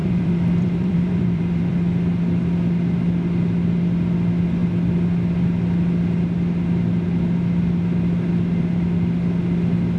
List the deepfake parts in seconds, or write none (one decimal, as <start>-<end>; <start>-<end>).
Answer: 0.0-1.7